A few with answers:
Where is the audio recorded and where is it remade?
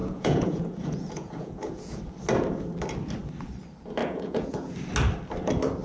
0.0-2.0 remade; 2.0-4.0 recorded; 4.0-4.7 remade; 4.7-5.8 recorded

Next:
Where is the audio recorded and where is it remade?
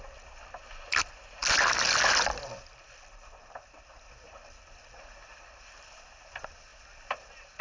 0.0-7.6 recorded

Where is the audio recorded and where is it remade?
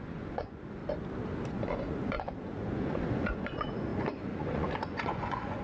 0.0-0.8 remade; 0.8-1.5 recorded; 1.5-5.6 remade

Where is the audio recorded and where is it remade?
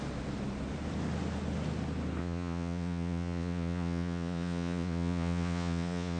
0.0-2.2 recorded; 2.2-6.2 remade